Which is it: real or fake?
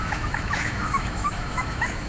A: fake